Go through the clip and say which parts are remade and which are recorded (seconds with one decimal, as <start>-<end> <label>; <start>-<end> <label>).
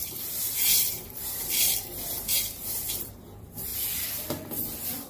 0.0-3.7 remade; 3.7-5.1 recorded